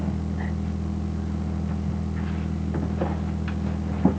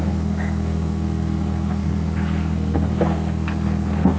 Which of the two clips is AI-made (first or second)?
second